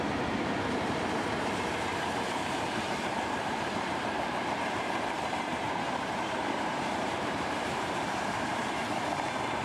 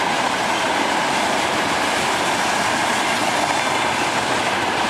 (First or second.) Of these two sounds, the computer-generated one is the first